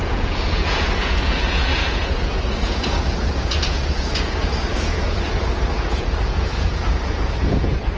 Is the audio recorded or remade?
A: remade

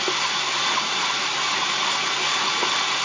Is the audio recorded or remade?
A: recorded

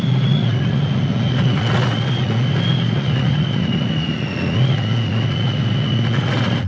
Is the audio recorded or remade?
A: remade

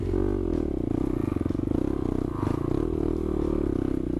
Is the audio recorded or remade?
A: recorded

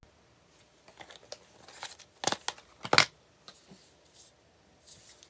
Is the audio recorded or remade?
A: recorded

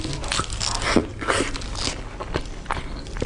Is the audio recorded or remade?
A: recorded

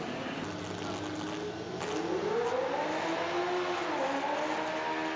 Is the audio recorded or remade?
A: recorded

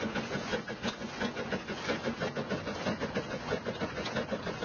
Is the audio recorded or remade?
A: remade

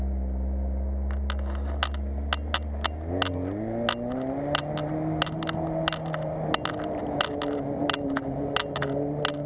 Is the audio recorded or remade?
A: recorded